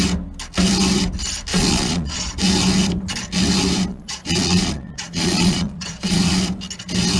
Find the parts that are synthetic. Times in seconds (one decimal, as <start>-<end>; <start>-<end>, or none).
1.5-2.3; 3.9-6.2